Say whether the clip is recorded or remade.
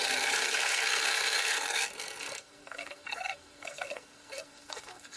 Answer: remade